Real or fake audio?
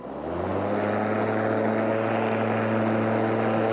real